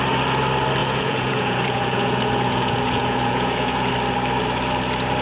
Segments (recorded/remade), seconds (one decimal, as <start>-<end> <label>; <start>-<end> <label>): 0.0-0.8 recorded; 0.8-3.9 remade; 3.9-5.2 recorded